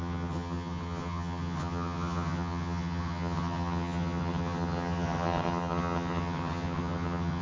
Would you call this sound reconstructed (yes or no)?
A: yes